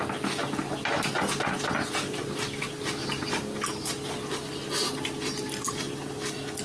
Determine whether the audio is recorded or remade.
recorded